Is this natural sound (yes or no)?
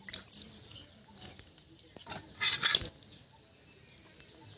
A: yes